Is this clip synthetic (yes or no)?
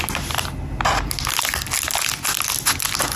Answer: no